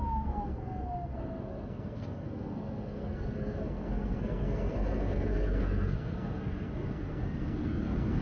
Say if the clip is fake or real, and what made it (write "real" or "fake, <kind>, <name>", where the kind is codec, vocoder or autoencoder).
fake, codec, SNAC